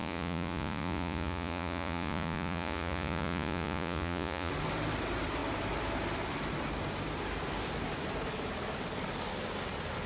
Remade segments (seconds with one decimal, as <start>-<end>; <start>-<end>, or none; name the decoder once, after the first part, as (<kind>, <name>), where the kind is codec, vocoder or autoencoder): 0.0-4.5 (vocoder, Vocos)